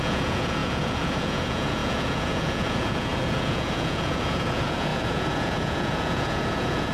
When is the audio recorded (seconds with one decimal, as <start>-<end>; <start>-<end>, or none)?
none